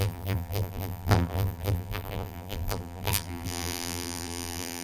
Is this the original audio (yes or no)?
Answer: no